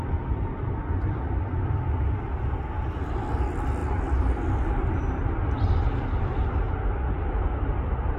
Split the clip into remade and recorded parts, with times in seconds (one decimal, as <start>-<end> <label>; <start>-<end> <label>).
0.0-8.2 recorded